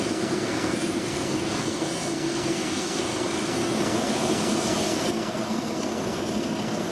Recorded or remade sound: remade